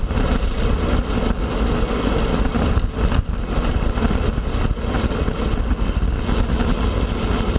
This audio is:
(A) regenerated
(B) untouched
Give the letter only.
B